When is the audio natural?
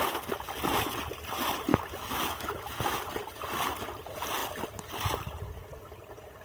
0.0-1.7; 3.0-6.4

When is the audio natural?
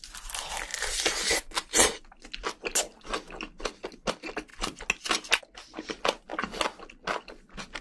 0.0-7.8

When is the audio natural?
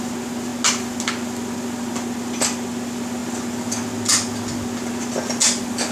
0.0-5.9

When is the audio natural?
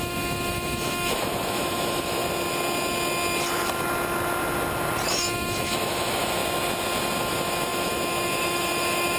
2.2-5.1; 6.4-7.2